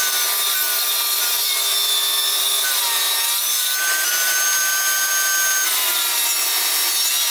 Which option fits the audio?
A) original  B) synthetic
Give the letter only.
A